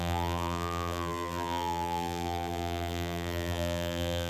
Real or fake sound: fake